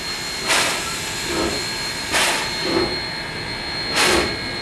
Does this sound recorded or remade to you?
recorded